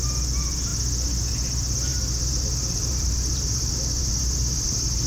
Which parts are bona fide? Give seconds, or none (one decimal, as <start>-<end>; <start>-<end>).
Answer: 0.0-1.9